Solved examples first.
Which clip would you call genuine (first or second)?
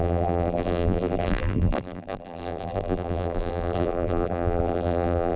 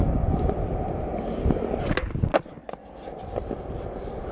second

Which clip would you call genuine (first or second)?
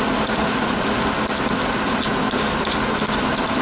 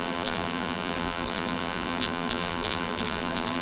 first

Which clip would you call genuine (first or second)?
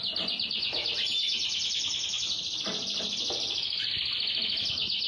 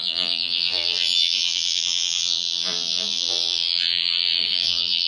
first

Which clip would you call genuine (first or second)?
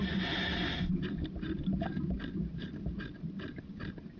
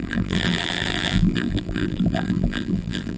first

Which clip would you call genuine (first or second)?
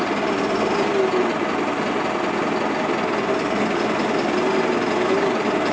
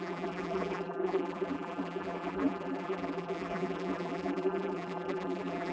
first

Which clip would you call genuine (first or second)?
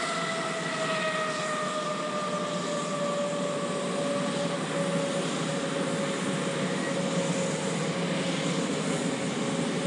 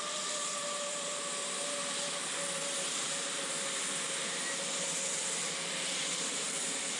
first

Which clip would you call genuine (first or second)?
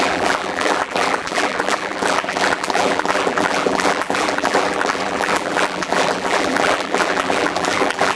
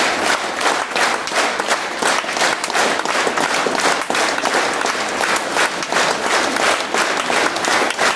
second